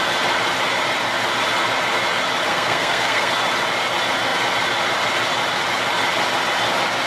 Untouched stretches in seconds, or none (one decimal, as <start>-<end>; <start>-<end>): 0.0-2.5; 3.3-7.1